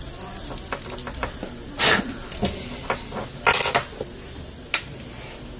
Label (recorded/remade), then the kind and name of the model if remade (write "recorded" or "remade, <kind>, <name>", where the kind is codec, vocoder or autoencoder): recorded